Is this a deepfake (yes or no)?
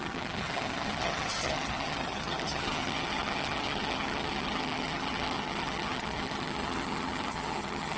yes